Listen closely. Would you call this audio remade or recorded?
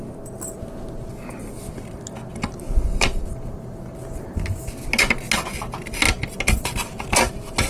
recorded